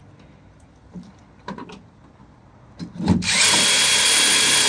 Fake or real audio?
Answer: fake